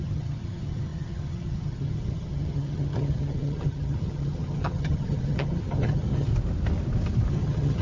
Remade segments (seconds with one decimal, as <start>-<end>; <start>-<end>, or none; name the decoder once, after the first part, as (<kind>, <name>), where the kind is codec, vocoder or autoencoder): 0.0-6.3 (vocoder, HiFi-GAN); 7.3-7.8